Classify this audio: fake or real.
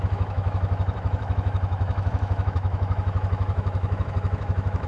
fake